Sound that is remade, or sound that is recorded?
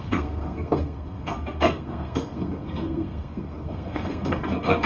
remade